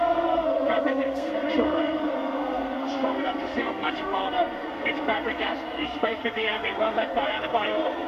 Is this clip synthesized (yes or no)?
yes